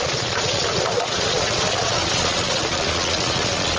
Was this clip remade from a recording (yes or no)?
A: yes